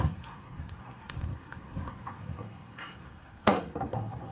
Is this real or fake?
fake